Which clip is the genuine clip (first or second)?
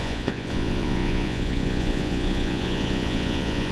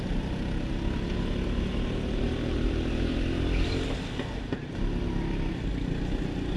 second